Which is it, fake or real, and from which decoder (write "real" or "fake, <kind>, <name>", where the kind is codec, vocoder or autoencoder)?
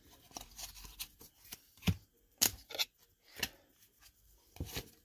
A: real